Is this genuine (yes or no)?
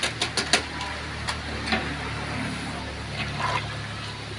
yes